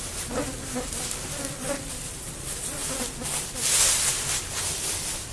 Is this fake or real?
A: real